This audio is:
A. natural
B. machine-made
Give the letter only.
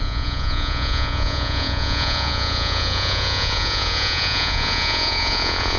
B